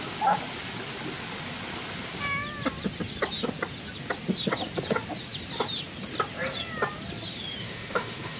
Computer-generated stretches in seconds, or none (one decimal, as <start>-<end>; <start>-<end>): 7.6-8.4